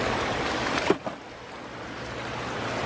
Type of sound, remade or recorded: recorded